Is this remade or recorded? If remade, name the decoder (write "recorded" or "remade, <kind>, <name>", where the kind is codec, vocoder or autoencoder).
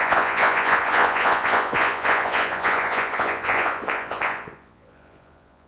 remade, vocoder, Vocos